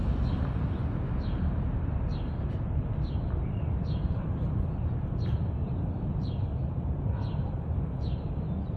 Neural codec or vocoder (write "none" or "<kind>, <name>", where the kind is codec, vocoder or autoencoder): none